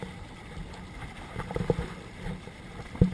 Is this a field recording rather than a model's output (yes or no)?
yes